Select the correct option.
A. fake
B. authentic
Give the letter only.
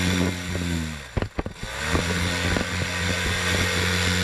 B